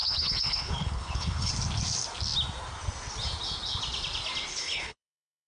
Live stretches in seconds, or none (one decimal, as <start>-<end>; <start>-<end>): 1.5-4.5